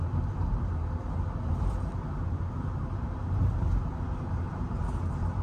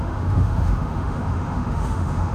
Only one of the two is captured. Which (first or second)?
first